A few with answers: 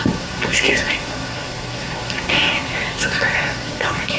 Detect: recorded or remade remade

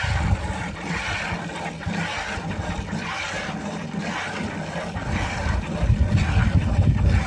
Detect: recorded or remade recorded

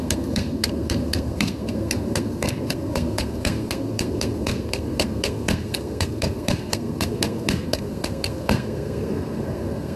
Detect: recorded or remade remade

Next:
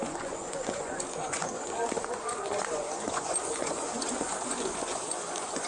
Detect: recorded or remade remade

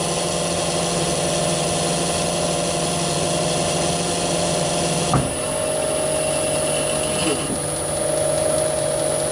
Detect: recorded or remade recorded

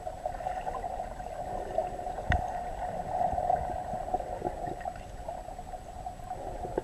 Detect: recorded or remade recorded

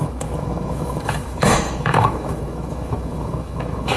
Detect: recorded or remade remade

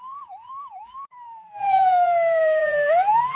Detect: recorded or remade remade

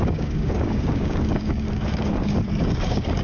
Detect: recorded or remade remade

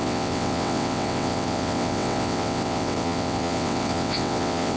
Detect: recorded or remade remade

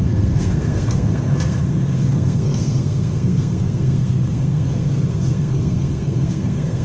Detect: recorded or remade remade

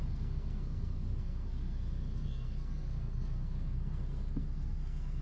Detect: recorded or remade remade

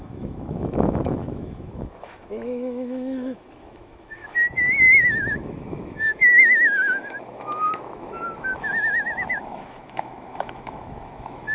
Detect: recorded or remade remade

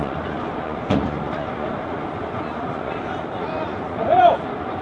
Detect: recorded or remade remade